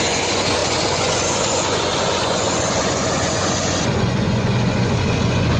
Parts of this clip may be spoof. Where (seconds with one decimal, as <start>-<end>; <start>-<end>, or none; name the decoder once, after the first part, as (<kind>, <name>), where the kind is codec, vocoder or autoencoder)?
0.0-5.6 (vocoder, Vocos)